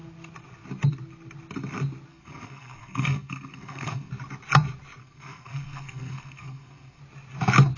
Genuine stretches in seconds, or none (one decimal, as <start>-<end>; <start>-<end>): 0.0-2.1; 4.1-5.0; 7.0-7.8